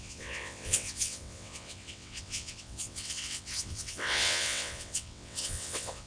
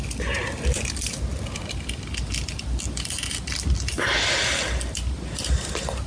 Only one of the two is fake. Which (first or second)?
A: first